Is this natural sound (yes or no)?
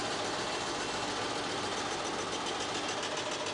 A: yes